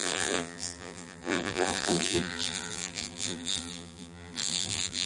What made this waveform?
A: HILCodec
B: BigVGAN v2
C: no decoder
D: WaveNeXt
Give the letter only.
B